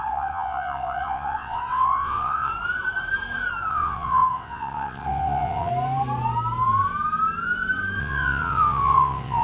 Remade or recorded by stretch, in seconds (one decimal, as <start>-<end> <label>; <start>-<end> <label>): 0.0-2.5 remade; 2.5-3.7 recorded; 3.7-5.7 remade; 5.7-8.0 recorded; 8.0-9.4 remade

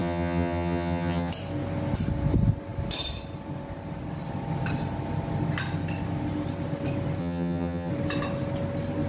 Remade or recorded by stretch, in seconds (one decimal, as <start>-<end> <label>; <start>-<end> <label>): 0.0-1.3 remade; 1.3-7.2 recorded; 7.2-7.9 remade; 7.9-9.1 recorded

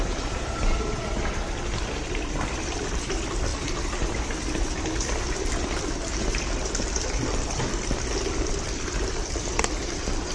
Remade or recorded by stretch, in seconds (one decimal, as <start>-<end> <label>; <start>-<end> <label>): 0.0-10.3 remade

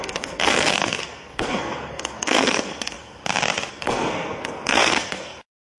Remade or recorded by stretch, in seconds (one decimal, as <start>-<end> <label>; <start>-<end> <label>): 0.0-3.2 remade; 3.2-3.7 recorded; 3.7-5.8 remade

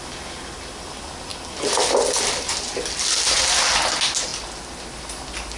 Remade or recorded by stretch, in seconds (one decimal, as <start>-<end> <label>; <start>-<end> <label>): 0.0-5.6 recorded

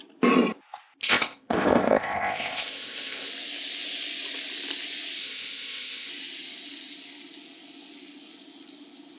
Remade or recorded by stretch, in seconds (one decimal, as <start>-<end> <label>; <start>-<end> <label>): 0.0-1.0 recorded; 1.0-3.3 remade; 3.3-5.2 recorded; 5.2-6.1 remade; 6.1-9.2 recorded